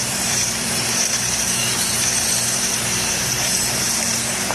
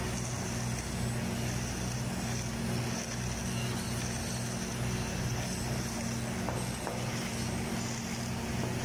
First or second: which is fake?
first